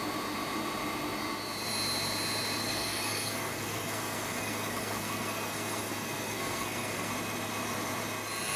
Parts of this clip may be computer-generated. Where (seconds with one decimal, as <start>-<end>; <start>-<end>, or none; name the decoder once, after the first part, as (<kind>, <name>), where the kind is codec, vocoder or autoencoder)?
2.6-7.1 (codec, SNAC)